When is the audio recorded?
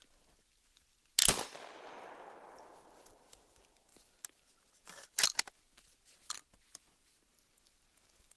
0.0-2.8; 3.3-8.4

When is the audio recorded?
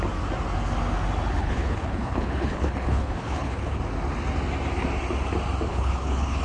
0.0-1.4; 3.8-5.7